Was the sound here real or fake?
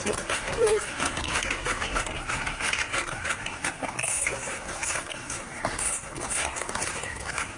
fake